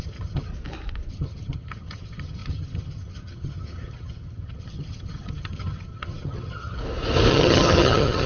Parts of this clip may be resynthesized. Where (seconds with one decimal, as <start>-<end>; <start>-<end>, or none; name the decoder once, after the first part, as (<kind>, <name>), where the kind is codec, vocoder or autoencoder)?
0.0-0.5 (vocoder, HiFi-GAN); 1.1-6.8; 7.3-8.3